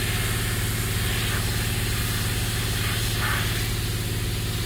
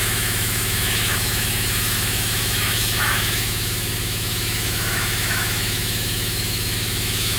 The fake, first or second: second